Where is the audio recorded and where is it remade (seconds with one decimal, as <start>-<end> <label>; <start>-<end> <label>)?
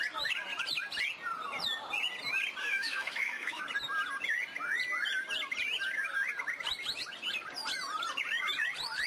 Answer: 0.0-2.6 recorded; 2.6-3.6 remade; 3.6-9.1 recorded